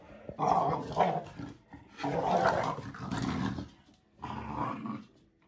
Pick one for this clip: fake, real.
real